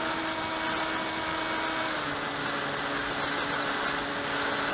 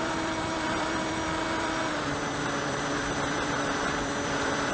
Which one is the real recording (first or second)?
first